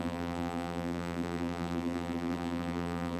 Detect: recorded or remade remade